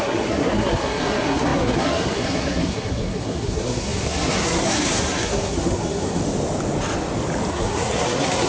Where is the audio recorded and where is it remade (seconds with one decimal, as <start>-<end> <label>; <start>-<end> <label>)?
0.0-6.2 remade; 6.2-7.5 recorded; 7.5-8.5 remade